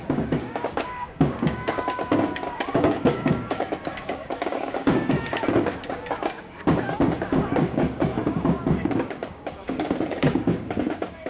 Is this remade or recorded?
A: remade